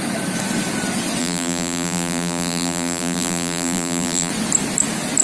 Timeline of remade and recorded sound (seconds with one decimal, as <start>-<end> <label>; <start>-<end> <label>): 0.0-1.2 recorded; 1.2-4.3 remade; 4.3-5.2 recorded

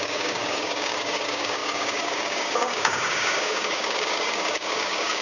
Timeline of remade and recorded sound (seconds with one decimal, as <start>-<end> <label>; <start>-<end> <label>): 0.0-5.2 remade

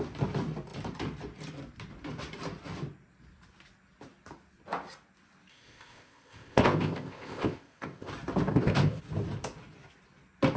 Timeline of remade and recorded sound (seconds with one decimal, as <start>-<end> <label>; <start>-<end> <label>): 0.0-5.5 recorded; 5.5-8.1 remade; 8.1-8.5 recorded; 8.5-9.0 remade; 9.0-10.6 recorded

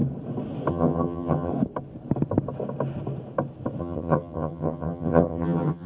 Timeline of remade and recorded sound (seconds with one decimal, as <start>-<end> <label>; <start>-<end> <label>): 0.0-0.7 recorded; 0.7-1.5 remade; 1.5-3.8 recorded; 3.8-5.9 remade